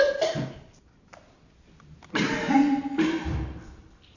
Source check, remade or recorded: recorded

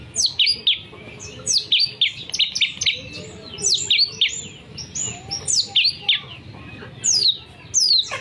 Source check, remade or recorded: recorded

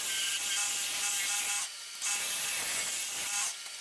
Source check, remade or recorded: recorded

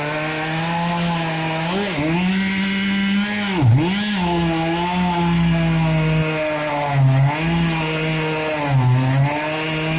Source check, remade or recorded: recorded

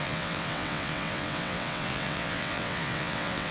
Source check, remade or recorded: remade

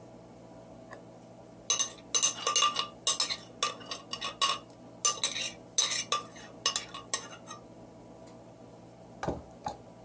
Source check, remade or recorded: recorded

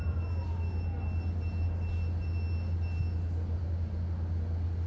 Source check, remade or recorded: recorded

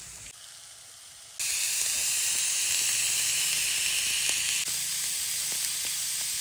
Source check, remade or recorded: recorded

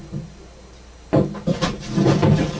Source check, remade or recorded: recorded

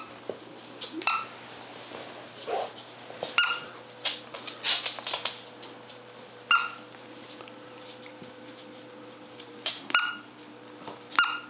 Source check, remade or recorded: recorded